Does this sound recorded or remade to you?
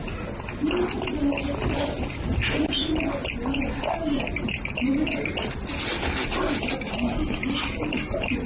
recorded